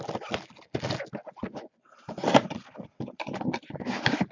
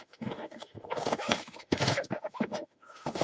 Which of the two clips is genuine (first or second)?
first